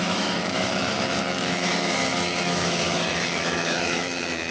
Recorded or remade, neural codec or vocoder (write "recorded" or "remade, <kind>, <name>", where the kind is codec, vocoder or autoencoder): remade, autoencoder, DAC-VAE